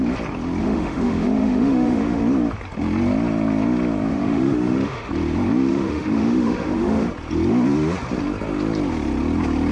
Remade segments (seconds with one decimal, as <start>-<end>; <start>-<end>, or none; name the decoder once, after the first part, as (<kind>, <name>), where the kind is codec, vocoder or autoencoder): 0.6-2.2 (autoencoder, DAC-VAE); 4.1-5.1; 5.7-7.1